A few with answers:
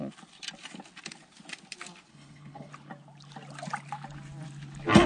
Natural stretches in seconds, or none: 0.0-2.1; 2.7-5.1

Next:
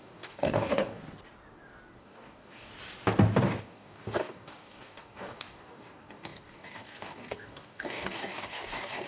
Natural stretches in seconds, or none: 1.0-2.0; 2.7-3.6

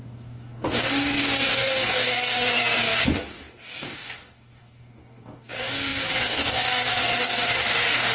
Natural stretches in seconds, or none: none

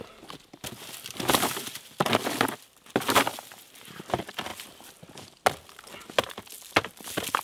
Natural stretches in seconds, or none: 0.0-7.4

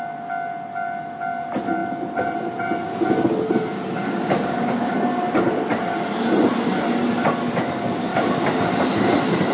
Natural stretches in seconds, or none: 0.0-4.0; 4.9-9.5

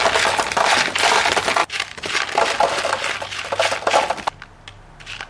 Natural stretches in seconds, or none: 0.0-5.3

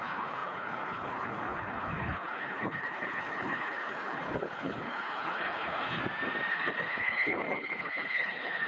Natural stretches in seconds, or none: 6.0-6.5

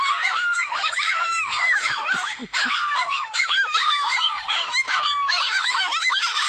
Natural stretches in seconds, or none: none